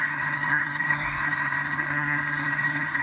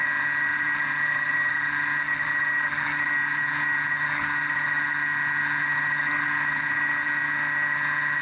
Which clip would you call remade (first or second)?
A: first